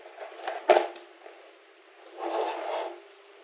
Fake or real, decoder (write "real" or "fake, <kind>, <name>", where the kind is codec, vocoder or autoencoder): real